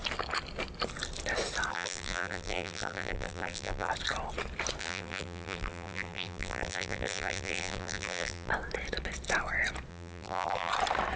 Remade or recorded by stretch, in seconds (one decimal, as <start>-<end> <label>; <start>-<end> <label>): 0.0-1.7 recorded; 1.7-3.9 remade; 3.9-4.8 recorded; 4.8-8.5 remade; 8.5-9.9 recorded; 9.9-10.7 remade; 10.7-11.2 recorded